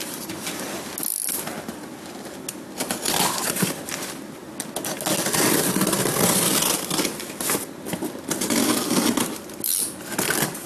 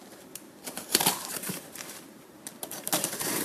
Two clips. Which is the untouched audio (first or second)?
first